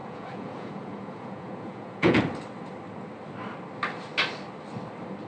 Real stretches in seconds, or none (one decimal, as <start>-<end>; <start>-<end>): 2.2-5.3